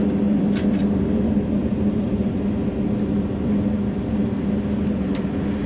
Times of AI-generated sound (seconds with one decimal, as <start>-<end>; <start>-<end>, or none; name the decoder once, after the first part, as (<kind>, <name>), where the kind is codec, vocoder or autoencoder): 1.6-2.3 (vocoder, BigVGAN v2)